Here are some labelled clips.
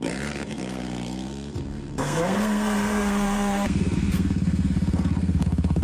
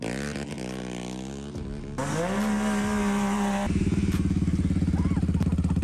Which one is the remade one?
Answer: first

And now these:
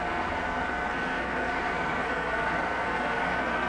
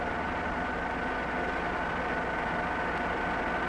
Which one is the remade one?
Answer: first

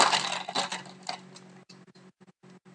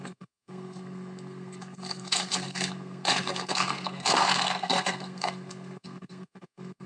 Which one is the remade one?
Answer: second